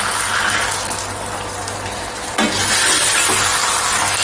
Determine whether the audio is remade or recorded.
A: recorded